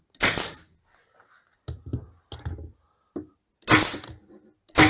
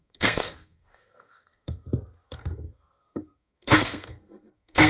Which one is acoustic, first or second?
first